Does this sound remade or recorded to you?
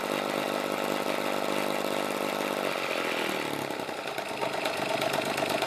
recorded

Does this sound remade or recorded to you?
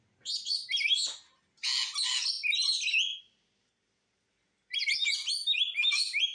recorded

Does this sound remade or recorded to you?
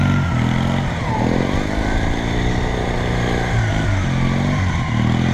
recorded